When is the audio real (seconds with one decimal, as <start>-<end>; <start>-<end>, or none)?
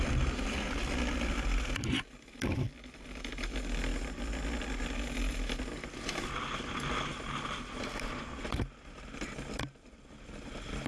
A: 0.0-10.9